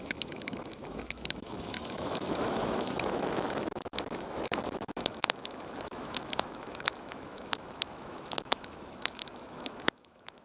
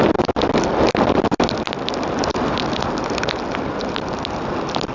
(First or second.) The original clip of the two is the second